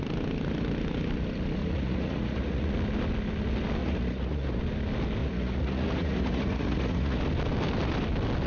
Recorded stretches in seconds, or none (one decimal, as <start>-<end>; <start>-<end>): 0.0-1.6; 2.7-3.8; 4.6-5.2; 7.2-8.5